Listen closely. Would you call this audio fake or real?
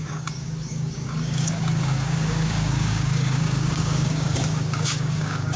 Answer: fake